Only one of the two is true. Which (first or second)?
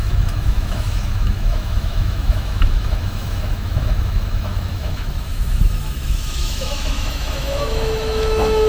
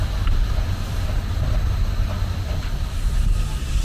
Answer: second